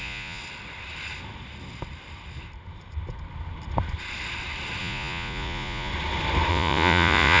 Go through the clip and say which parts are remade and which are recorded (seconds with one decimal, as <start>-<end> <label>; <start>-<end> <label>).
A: 0.0-0.4 remade; 0.4-4.8 recorded; 4.8-5.9 remade; 5.9-6.5 recorded; 6.5-7.4 remade